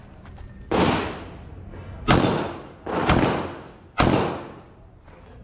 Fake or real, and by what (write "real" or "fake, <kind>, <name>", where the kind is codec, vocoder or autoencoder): real